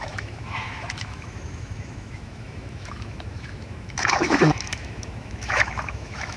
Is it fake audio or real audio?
fake